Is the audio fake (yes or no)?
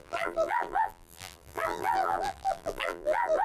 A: yes